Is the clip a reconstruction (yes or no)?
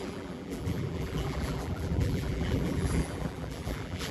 yes